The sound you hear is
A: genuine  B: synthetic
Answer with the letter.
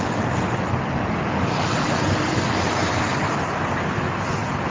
A